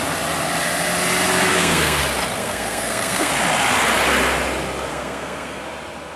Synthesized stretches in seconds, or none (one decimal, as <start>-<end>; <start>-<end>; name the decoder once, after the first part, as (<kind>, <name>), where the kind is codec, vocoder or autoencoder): 1.5-2.0 (codec, SNAC); 2.4-3.3; 4.9-5.6